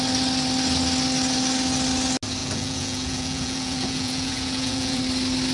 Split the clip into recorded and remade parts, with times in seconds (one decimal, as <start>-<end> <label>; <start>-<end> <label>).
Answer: 0.0-2.4 recorded; 2.4-5.0 remade; 5.0-5.5 recorded